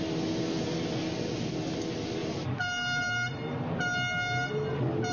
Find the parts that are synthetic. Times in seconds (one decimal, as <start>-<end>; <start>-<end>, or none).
none

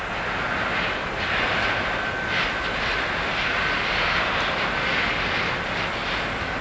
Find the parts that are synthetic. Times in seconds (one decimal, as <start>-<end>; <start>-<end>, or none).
none